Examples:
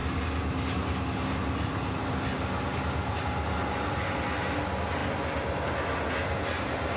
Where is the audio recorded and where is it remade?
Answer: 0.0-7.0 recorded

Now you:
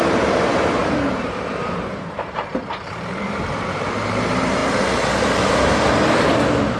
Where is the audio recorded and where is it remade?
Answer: 0.0-4.6 remade; 4.6-6.8 recorded

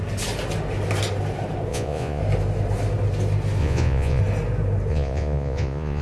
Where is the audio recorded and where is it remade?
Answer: 0.0-1.7 recorded; 1.7-2.2 remade; 2.2-3.6 recorded; 3.6-4.2 remade; 4.2-4.9 recorded; 4.9-6.0 remade

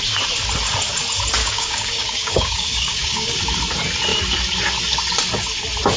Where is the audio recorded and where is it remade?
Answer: 0.0-1.4 recorded; 1.4-3.4 remade; 3.4-6.0 recorded

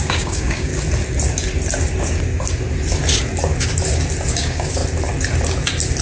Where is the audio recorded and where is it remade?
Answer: 0.0-0.7 remade; 0.7-4.3 recorded; 4.3-4.8 remade; 4.8-6.0 recorded

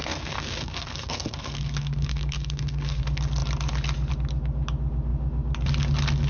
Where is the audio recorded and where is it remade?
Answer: 0.0-3.0 remade; 3.0-6.3 recorded

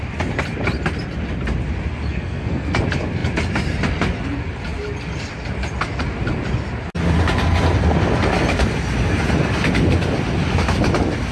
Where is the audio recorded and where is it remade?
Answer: 0.0-2.1 recorded; 2.1-2.8 remade; 2.8-11.3 recorded